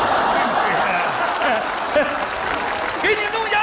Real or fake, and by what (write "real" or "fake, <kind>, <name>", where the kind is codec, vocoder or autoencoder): real